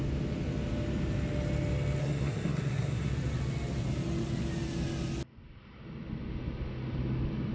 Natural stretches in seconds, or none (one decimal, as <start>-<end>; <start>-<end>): 0.0-2.0; 3.1-7.5